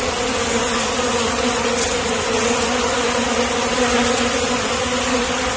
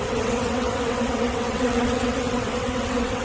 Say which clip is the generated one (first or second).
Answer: second